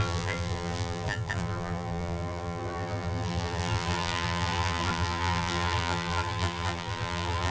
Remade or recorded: remade